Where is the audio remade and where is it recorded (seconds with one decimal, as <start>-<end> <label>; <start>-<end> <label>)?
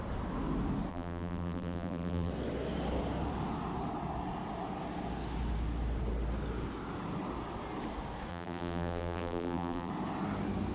0.0-0.9 recorded; 0.9-2.3 remade; 2.3-8.3 recorded; 8.3-9.9 remade; 9.9-10.7 recorded